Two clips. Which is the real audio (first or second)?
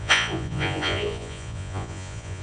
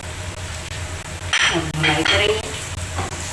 second